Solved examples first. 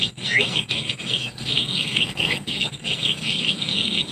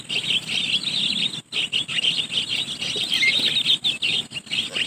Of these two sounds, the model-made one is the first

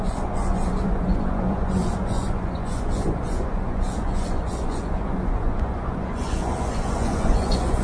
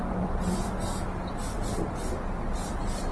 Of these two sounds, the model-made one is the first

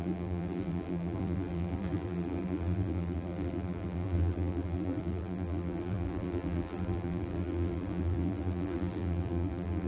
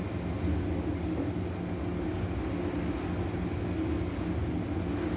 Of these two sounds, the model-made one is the first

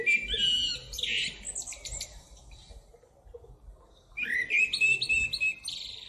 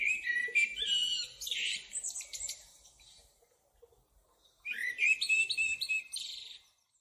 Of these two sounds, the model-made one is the second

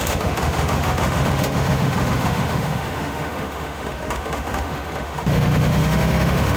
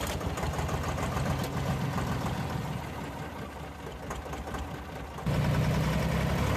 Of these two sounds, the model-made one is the first